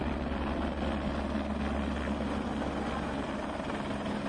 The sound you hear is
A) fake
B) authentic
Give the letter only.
B